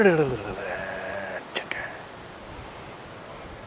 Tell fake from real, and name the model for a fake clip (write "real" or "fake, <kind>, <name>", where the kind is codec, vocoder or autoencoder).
real